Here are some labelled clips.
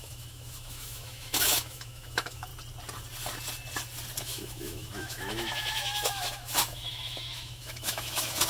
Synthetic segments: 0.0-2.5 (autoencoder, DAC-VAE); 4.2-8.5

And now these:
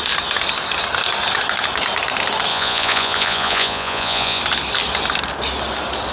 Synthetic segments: 2.5-4.4 (vocoder, Vocos)

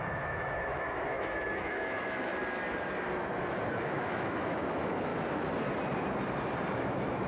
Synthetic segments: 0.0-2.3 (autoencoder, DAC-VAE); 3.7-5.1; 6.7-7.3

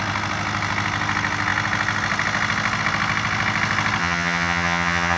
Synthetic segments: 4.0-5.2 (vocoder, HiFi-GAN)

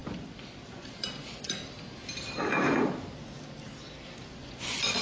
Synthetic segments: 0.7-1.6 (vocoder, Vocos); 4.3-5.0

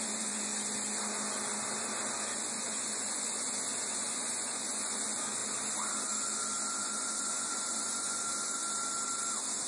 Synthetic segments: 0.0-0.5 (vocoder, Vocos); 2.2-5.4; 6.8-8.6

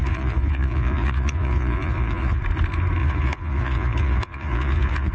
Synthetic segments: 0.0-2.4 (vocoder, Vocos); 3.0-5.1